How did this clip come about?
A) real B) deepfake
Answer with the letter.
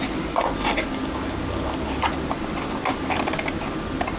A